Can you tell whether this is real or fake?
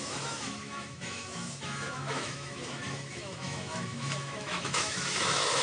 fake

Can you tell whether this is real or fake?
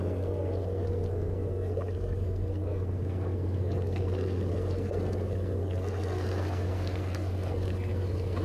fake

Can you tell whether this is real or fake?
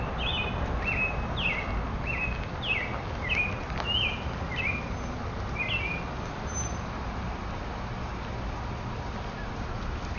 real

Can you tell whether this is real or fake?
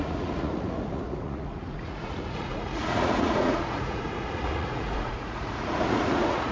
fake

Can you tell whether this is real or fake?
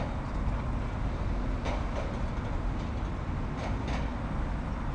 real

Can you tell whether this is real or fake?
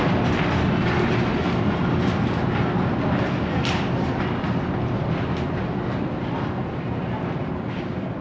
real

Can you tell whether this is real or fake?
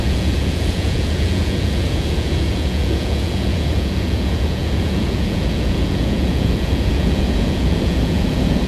fake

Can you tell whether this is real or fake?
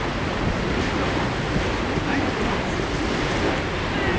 real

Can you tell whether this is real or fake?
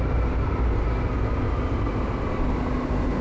real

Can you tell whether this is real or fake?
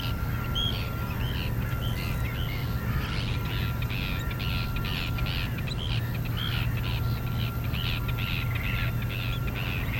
real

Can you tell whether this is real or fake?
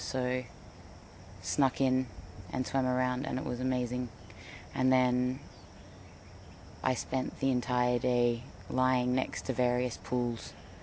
real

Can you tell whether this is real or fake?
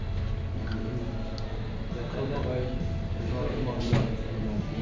real